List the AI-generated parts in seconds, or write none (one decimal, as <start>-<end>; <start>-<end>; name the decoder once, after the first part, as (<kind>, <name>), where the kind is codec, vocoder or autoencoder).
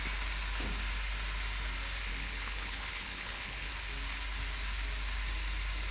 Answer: 2.1-3.7 (codec, HILCodec)